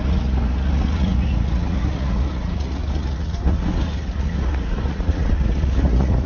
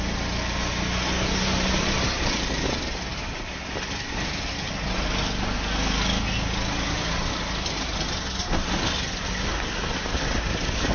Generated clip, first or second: first